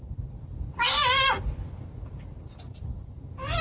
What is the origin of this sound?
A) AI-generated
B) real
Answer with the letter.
B